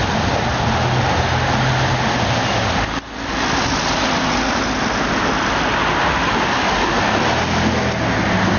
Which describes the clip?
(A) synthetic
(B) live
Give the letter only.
B